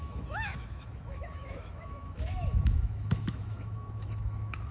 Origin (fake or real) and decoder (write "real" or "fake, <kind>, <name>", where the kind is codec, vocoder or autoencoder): fake, autoencoder, DAC-VAE